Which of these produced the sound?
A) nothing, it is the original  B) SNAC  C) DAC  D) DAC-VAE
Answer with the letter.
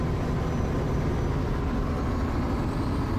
A